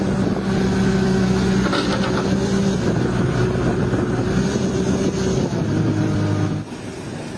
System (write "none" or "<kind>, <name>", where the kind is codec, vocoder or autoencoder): none